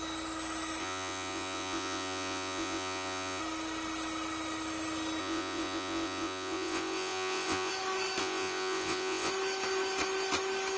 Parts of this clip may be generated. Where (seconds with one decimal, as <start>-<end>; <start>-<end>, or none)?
0.8-3.4; 5.2-7.7; 8.2-9.3